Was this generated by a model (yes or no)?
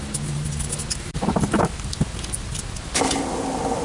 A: no